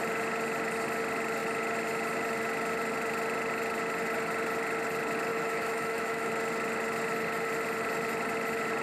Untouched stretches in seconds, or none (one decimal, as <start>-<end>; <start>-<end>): 0.0-5.3; 6.3-8.8